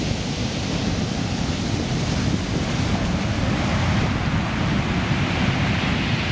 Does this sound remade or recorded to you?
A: recorded